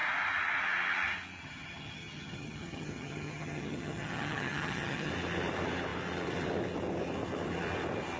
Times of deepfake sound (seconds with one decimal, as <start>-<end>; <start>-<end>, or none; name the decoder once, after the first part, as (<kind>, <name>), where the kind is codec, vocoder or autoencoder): 1.4-5.1 (vocoder, HiFi-GAN)